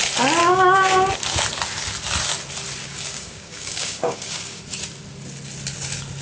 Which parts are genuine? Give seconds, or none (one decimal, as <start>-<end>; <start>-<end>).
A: 0.0-0.4; 1.1-2.8; 4.6-6.2